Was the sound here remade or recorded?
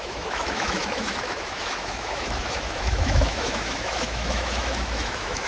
remade